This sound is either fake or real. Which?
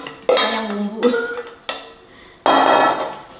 real